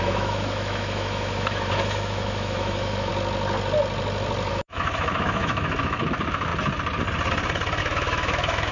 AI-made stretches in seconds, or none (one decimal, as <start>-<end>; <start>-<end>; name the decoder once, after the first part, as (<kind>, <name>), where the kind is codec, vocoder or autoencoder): 0.0-3.1 (autoencoder, DAC-VAE); 4.5-6.5; 7.8-8.7